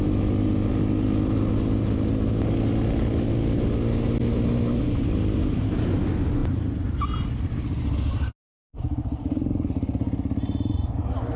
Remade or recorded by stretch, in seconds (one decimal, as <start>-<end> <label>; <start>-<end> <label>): 0.0-11.4 recorded